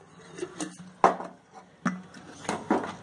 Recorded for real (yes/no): yes